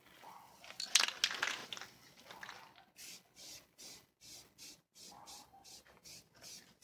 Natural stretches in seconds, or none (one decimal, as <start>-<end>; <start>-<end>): 0.0-6.8